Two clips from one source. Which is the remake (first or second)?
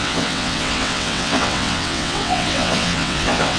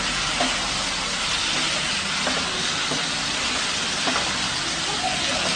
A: first